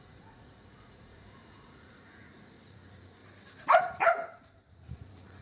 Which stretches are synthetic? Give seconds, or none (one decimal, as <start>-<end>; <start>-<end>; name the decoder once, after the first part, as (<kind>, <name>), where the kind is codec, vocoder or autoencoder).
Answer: 0.0-3.2 (vocoder, Vocos); 3.8-4.2; 4.7-5.4